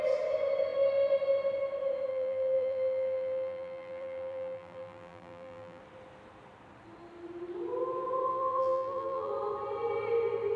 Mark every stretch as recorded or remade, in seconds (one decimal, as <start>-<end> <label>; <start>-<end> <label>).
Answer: 0.0-2.1 recorded; 2.1-5.8 remade; 5.8-8.3 recorded; 8.3-9.3 remade; 9.3-10.6 recorded